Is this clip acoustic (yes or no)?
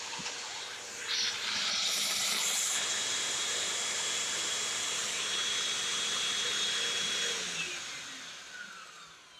no